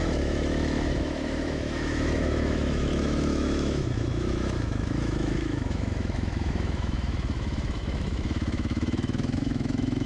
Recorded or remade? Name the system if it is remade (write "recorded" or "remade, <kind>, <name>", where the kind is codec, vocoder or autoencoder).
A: remade, autoencoder, DAC-VAE